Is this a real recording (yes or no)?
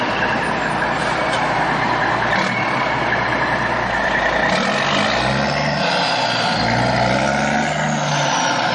yes